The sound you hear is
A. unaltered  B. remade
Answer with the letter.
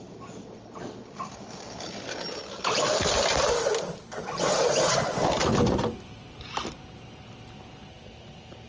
A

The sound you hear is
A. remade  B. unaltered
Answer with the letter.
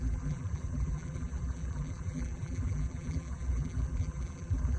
A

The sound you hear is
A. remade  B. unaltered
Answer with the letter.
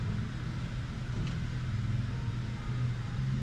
B